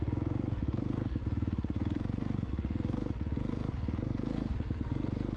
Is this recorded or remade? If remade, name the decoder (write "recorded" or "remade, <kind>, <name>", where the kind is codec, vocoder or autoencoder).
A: remade, codec, SNAC